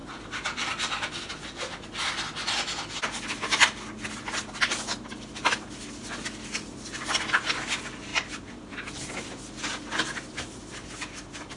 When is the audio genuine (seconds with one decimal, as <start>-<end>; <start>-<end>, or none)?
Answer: 1.1-8.1; 8.7-10.6; 11.1-11.6